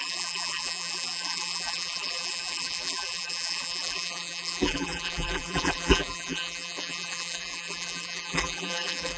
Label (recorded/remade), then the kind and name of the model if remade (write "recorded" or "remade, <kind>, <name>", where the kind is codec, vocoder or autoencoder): remade, vocoder, BigVGAN v2